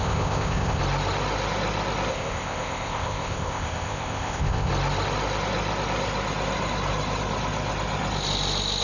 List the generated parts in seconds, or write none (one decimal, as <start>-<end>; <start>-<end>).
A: 0.0-0.8; 2.1-4.7